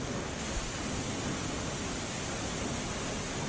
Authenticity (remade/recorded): recorded